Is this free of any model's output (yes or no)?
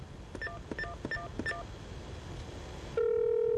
yes